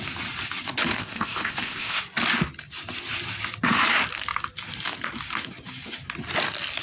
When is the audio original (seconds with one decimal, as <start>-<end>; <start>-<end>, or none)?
0.0-1.0; 2.0-6.8